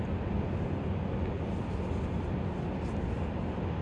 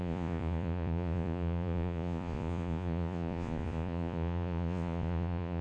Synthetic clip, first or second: second